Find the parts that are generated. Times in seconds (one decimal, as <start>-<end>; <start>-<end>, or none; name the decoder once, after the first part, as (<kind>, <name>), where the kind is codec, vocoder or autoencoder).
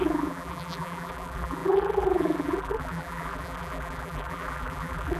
0.0-5.2 (vocoder, BigVGAN v2)